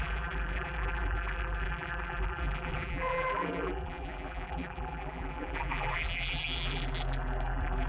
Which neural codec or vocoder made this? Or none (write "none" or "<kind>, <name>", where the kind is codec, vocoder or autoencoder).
vocoder, BigVGAN v2